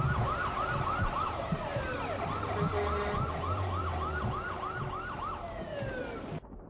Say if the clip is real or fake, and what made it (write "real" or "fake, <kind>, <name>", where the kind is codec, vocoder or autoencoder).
real